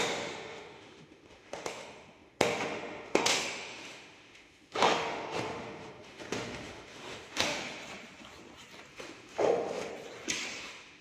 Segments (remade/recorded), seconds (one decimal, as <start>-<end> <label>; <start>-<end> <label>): 0.0-7.6 remade; 7.6-8.9 recorded; 8.9-9.9 remade; 9.9-10.6 recorded; 10.6-11.0 remade